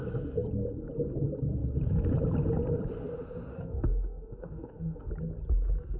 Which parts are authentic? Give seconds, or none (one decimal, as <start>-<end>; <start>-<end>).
0.0-3.5; 5.1-6.0